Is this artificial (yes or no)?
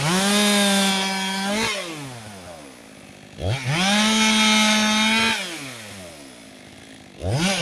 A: no